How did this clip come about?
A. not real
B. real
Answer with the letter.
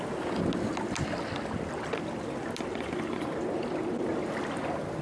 B